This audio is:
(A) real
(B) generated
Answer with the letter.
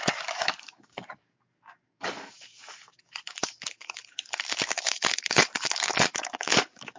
B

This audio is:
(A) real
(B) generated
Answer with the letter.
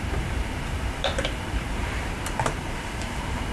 B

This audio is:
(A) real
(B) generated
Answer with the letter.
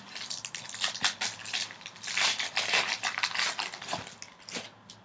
A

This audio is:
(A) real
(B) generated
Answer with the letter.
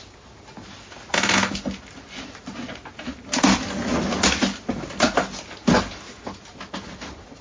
A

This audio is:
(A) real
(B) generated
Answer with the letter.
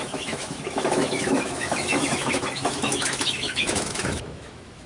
B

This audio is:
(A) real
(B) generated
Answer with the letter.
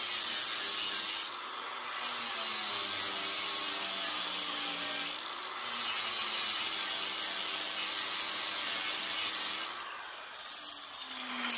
A